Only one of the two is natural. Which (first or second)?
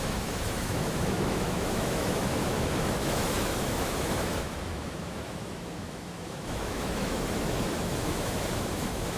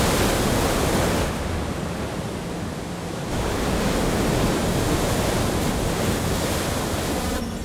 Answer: second